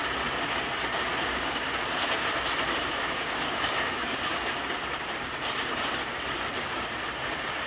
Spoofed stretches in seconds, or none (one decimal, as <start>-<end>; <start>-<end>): 1.3-1.8; 3.0-4.5